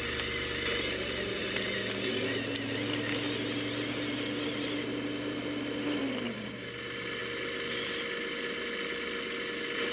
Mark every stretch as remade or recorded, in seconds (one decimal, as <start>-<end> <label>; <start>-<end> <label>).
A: 0.0-9.9 recorded